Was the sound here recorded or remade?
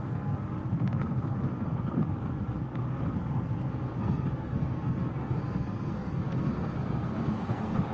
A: remade